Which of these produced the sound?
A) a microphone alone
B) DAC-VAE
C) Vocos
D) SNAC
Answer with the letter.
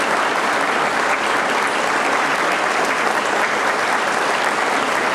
A